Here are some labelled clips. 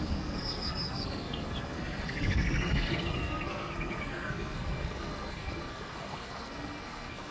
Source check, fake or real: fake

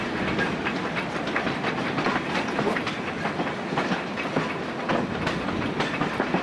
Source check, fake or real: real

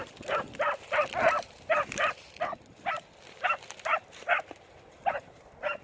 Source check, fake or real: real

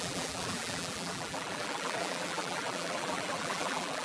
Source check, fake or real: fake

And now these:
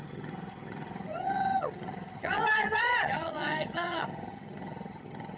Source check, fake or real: fake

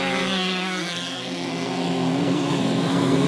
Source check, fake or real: fake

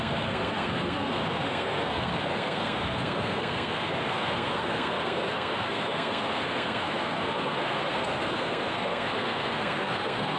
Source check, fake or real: fake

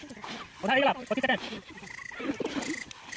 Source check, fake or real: real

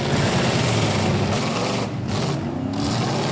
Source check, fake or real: real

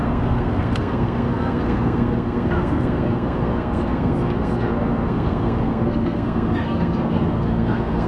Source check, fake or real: fake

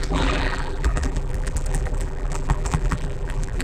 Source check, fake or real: fake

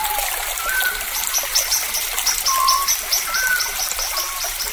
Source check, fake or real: fake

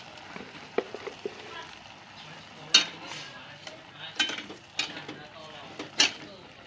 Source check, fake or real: real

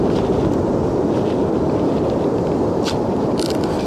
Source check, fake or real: real